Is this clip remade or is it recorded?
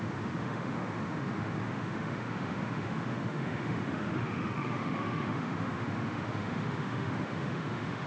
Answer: remade